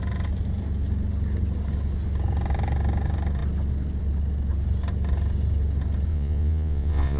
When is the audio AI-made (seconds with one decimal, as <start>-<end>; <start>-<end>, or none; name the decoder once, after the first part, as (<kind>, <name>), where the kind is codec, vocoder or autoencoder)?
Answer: 6.1-7.2 (vocoder, Vocos)